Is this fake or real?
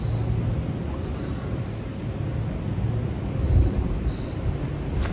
real